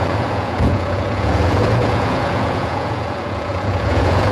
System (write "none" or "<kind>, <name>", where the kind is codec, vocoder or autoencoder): vocoder, Vocos